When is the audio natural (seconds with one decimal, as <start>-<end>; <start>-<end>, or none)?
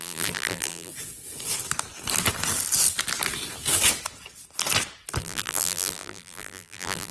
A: 0.9-5.2